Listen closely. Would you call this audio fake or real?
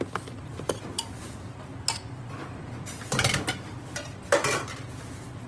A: fake